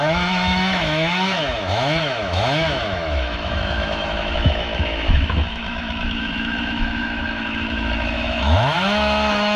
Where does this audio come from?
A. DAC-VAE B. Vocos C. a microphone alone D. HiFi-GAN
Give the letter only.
A